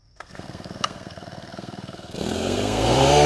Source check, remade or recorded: remade